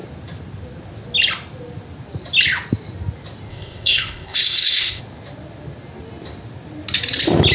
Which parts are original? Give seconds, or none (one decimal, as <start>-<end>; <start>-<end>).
0.0-3.5; 5.0-7.5